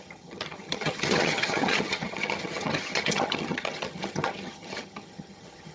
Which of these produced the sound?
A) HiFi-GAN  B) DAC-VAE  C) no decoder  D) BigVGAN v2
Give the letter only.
A